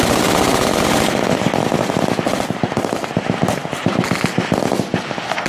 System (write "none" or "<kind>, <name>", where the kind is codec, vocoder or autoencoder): none